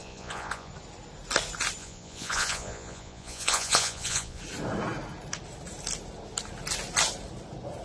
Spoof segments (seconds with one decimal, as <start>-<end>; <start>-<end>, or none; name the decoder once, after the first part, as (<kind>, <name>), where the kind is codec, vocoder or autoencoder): 0.0-0.7 (vocoder, Vocos); 1.8-4.4